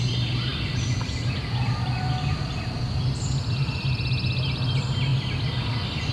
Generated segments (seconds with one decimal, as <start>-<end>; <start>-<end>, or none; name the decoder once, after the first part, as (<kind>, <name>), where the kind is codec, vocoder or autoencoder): none